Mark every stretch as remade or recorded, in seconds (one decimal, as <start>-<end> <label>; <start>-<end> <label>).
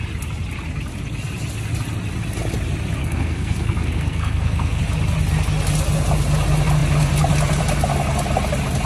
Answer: 0.0-3.0 recorded; 3.0-4.8 remade; 4.8-8.9 recorded